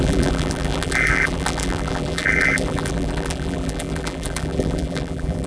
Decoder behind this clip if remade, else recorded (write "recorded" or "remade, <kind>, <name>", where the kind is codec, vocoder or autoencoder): remade, vocoder, BigVGAN v2